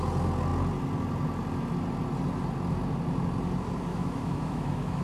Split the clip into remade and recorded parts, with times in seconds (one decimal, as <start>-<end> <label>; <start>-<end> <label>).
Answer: 0.0-3.9 recorded; 3.9-5.0 remade